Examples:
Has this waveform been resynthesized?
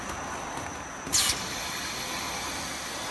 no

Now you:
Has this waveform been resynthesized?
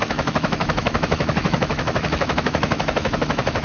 yes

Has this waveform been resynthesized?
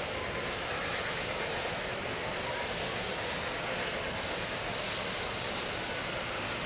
no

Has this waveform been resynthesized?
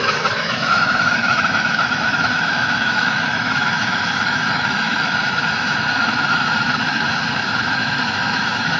yes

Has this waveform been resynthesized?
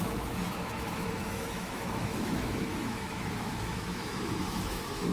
yes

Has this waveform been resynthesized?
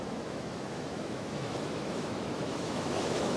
yes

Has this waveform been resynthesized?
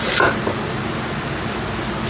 no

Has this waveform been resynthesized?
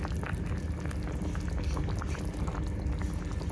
no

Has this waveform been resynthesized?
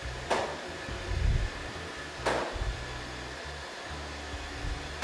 no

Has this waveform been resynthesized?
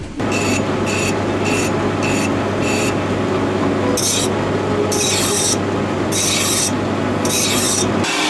no